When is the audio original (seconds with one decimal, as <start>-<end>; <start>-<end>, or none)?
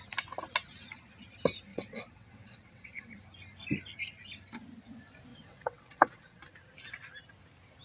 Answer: 0.0-1.7; 3.1-5.3; 6.4-7.8